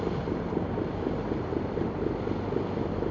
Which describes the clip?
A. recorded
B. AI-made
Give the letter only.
A